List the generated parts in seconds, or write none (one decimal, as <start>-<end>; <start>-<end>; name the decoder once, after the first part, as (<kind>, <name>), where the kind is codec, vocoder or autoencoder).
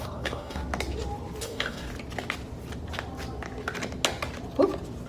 0.0-0.6 (codec, DAC); 1.4-1.9